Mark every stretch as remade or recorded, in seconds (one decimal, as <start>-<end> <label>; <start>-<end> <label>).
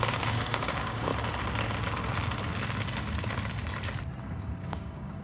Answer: 0.0-1.1 remade; 1.1-4.2 recorded; 4.2-5.2 remade